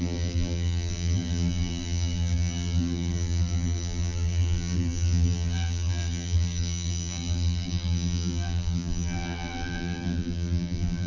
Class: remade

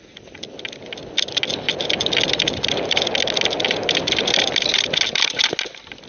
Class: recorded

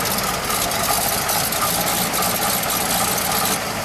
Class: recorded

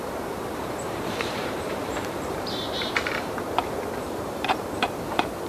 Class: remade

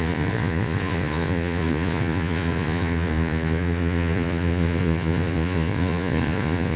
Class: remade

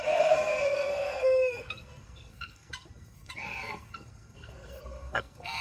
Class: remade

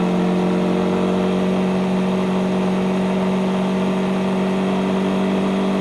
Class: recorded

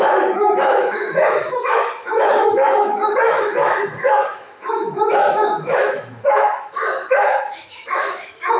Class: remade